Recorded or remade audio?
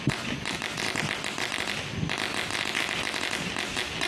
recorded